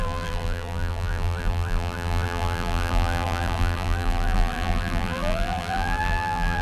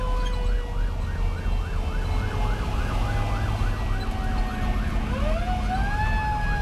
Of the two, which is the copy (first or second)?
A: first